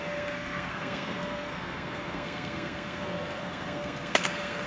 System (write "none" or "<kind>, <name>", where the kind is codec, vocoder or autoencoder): codec, SNAC